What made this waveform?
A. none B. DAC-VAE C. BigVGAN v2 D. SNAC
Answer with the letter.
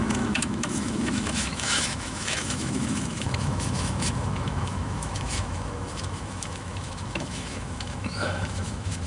B